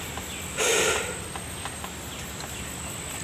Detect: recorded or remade recorded